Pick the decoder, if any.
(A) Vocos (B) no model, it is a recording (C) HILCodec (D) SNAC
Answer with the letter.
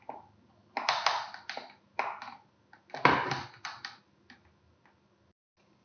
B